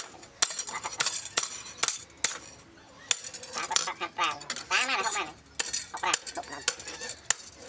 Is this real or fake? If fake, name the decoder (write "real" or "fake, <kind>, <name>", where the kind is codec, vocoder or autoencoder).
real